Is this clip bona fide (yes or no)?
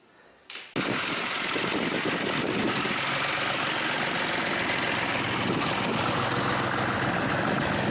yes